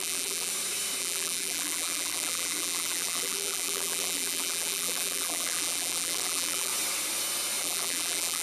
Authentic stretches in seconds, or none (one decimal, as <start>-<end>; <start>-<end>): 0.5-1.0; 6.7-7.6